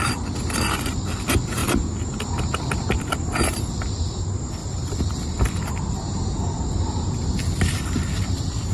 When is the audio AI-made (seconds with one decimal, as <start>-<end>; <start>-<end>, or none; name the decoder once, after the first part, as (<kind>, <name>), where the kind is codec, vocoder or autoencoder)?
none